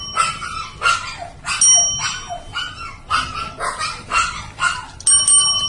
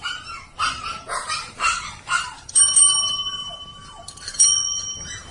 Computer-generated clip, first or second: second